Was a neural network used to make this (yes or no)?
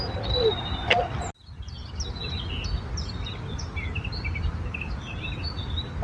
no